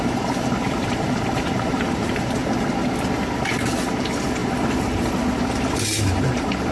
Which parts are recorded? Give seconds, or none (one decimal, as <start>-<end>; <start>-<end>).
2.4-4.0